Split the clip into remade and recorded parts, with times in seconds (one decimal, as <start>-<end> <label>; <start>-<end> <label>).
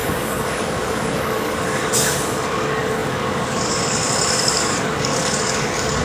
0.0-6.0 remade